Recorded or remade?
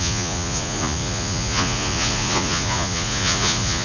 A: remade